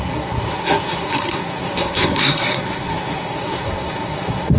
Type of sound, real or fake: fake